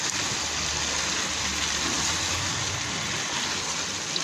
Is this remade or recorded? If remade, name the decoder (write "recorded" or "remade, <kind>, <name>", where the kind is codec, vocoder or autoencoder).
recorded